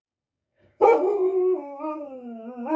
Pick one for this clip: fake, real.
fake